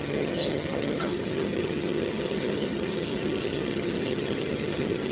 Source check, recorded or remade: remade